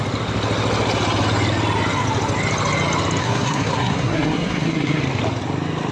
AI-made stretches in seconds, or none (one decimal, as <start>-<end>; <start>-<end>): 3.2-5.0